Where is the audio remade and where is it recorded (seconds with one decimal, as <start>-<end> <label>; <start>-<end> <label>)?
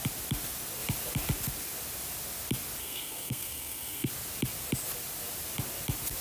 0.0-2.8 recorded; 2.8-4.1 remade; 4.1-6.2 recorded